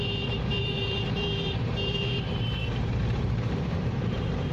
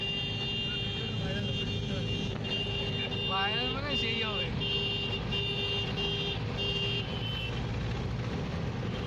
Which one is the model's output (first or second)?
first